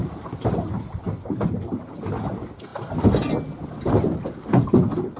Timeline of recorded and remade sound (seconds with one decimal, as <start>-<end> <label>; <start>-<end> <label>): 0.0-5.2 recorded